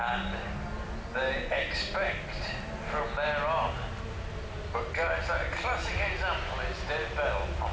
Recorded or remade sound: recorded